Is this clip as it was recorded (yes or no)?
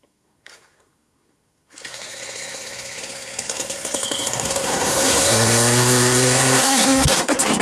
no